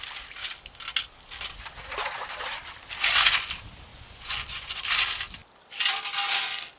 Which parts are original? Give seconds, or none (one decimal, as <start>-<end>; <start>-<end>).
0.0-3.9; 4.8-6.8